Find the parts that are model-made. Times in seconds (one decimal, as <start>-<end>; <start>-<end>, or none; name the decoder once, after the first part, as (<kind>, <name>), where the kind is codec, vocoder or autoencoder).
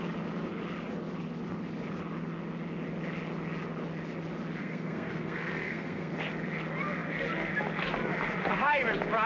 4.6-6.1 (codec, SNAC)